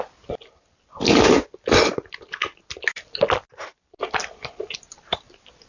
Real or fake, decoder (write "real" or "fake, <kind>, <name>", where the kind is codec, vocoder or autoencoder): real